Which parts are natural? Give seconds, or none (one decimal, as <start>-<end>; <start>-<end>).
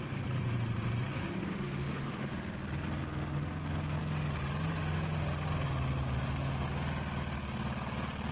0.0-1.4; 2.3-8.3